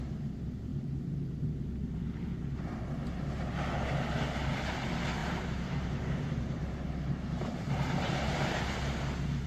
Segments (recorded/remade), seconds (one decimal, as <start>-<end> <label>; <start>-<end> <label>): 0.0-5.2 recorded; 5.2-8.5 remade; 8.5-9.5 recorded